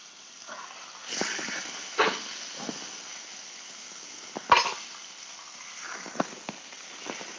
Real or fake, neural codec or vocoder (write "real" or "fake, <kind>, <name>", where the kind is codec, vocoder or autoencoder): real